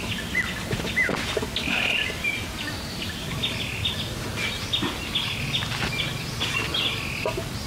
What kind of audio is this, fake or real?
real